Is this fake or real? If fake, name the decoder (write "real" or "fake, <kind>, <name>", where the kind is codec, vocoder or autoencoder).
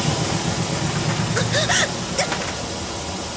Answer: real